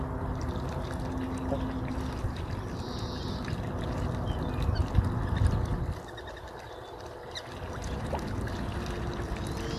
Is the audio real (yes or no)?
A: yes